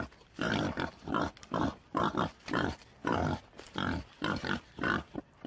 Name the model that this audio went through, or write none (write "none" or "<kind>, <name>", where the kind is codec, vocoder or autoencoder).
none